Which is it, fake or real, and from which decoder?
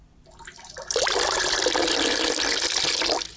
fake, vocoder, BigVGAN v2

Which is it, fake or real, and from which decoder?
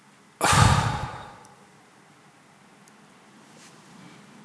real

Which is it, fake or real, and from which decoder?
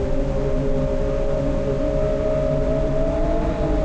real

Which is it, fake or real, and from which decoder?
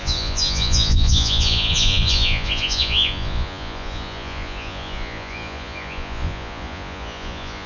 fake, vocoder, Vocos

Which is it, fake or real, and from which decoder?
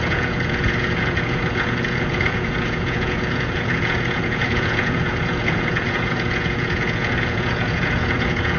fake, vocoder, Vocos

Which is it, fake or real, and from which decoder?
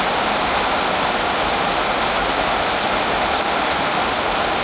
real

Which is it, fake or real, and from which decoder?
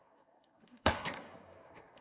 fake, codec, SNAC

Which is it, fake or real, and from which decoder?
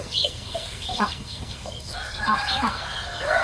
fake, codec, SNAC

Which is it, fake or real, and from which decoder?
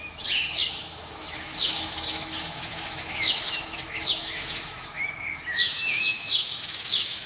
fake, autoencoder, DAC-VAE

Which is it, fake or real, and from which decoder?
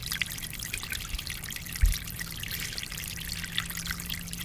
real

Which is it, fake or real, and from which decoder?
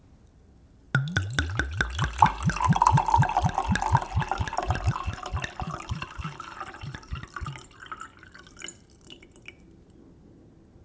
real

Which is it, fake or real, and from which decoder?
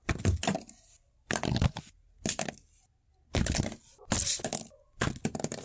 real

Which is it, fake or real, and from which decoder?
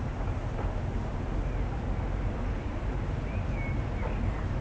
real